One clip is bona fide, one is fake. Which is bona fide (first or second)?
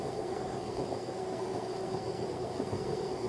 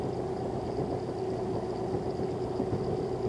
second